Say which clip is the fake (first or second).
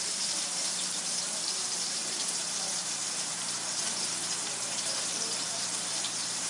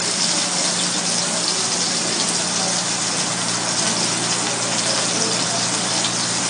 first